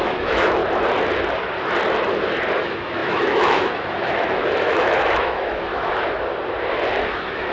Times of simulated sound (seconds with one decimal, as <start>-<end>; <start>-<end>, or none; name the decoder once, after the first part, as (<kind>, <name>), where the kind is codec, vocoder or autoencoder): 0.0-0.6 (autoencoder, DAC-VAE); 2.6-5.7; 7.1-7.5